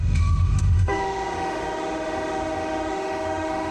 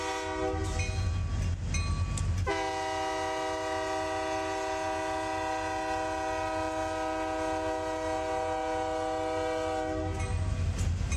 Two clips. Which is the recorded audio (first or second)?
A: second